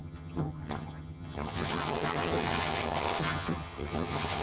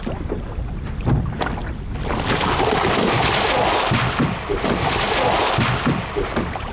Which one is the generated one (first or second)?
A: first